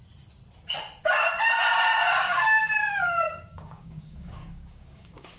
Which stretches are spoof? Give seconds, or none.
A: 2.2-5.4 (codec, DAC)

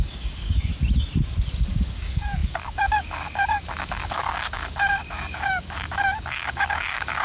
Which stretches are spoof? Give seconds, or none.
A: 0.0-0.7 (codec, DAC); 1.7-7.2

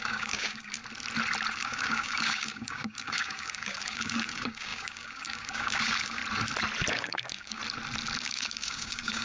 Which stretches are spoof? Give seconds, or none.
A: 0.0-0.8 (codec, DAC); 1.5-6.2; 6.9-7.6; 8.2-9.2

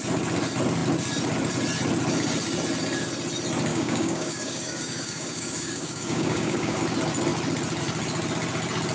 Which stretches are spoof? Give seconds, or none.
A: 3.7-6.8 (codec, DAC)

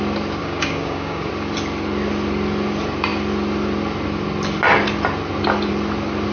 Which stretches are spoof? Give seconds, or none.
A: 0.4-1.3 (codec, DAC)

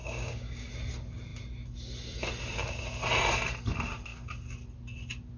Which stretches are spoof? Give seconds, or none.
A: 0.0-0.7 (codec, DAC)